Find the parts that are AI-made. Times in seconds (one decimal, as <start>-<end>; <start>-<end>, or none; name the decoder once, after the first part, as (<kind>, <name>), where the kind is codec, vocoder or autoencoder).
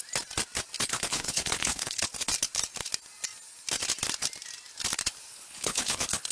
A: 0.8-2.1 (codec, HILCodec); 5.3-6.3